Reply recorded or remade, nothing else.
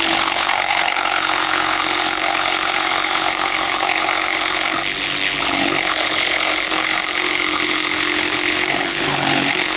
remade